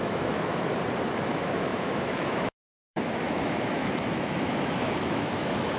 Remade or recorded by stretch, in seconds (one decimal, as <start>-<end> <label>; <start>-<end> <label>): 0.0-0.5 remade; 0.5-1.1 recorded; 1.1-5.8 remade